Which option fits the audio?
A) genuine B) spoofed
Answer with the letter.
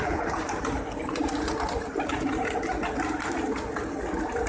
A